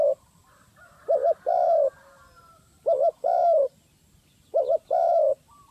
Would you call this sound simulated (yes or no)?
no